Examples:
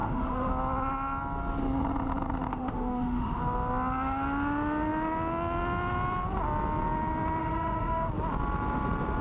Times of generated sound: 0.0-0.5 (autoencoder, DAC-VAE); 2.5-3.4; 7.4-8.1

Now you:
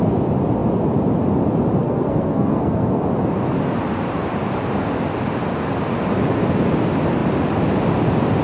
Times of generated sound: 1.8-3.0 (codec, SNAC)

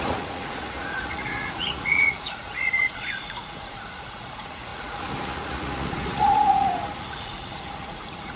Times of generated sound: 0.0-8.4 (vocoder, Vocos)

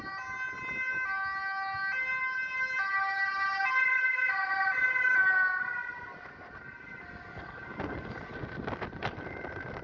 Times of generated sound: none

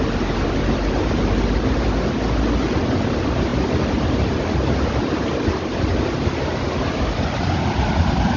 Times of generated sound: none